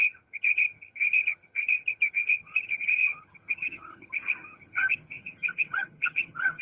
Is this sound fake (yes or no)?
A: yes